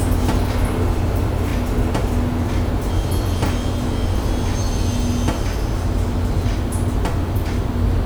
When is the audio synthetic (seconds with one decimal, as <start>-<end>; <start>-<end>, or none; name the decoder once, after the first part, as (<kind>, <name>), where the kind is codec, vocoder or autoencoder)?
none